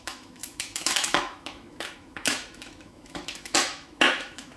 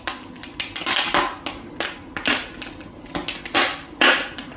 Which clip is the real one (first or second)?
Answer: second